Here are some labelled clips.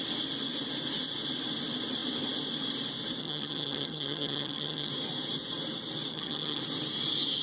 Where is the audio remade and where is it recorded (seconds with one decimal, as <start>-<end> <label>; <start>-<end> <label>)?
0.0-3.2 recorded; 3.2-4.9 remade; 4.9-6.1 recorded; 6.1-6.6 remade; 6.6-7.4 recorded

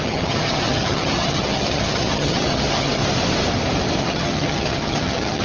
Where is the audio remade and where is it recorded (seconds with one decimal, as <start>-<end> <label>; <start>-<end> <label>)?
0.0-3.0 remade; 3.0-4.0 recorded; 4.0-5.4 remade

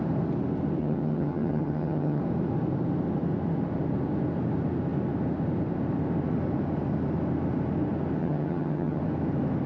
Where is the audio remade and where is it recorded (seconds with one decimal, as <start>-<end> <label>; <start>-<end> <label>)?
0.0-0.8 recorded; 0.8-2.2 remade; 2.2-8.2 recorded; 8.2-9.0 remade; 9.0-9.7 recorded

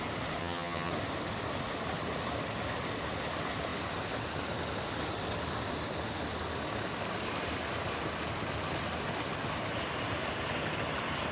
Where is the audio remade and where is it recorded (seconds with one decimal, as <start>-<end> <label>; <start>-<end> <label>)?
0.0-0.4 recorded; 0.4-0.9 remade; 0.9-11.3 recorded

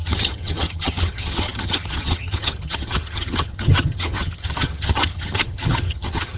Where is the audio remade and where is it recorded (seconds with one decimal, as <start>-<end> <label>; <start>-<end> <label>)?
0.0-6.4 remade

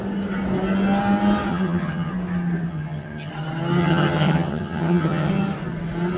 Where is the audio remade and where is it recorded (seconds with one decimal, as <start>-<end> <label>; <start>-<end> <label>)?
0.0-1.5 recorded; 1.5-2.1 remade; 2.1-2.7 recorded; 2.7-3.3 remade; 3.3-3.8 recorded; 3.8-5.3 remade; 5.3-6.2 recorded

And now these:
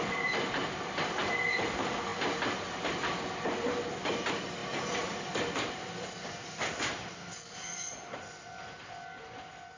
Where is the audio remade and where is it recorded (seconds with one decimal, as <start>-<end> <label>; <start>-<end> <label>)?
0.0-9.8 recorded